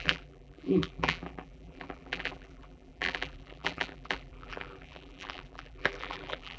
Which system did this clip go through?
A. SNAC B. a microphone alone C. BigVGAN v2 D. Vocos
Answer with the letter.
C